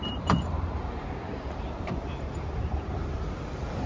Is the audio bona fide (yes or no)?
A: no